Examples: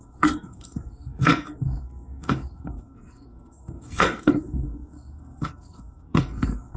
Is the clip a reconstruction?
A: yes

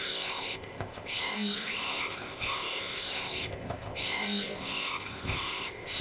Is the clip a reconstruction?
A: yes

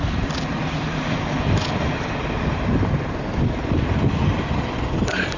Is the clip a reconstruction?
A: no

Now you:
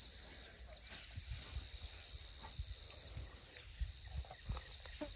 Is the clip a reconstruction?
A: no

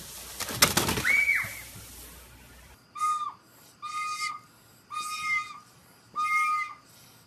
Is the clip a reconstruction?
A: no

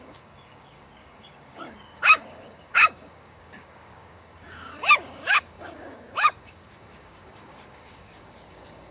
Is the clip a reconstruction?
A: yes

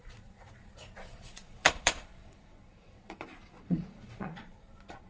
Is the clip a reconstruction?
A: yes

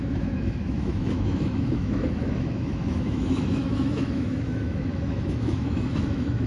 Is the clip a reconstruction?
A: yes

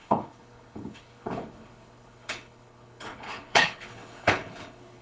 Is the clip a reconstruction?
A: yes